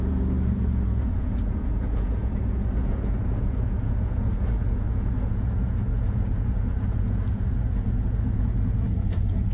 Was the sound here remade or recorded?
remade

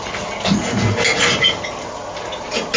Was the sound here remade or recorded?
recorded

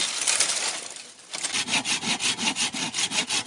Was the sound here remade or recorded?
recorded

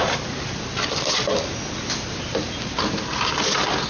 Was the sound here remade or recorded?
recorded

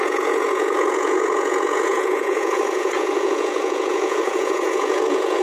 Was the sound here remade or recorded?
remade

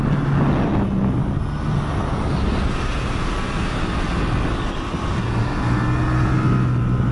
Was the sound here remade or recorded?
recorded